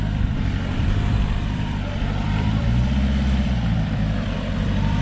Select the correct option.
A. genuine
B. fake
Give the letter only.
B